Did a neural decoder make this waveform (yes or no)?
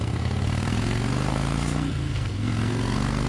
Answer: yes